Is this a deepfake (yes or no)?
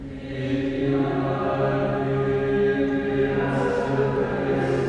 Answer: no